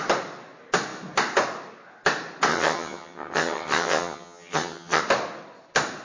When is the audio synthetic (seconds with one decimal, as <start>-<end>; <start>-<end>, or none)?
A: 2.5-5.0

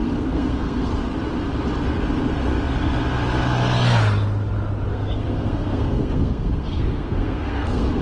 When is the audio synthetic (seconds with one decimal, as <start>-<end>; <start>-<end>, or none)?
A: 0.0-0.9; 4.9-8.0

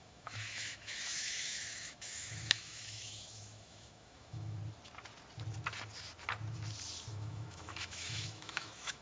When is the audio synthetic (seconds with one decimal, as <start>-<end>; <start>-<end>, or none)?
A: 0.0-4.6; 7.1-9.0